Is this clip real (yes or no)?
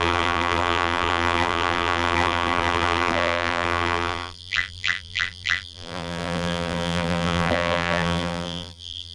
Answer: no